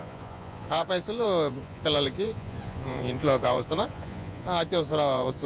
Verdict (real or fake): fake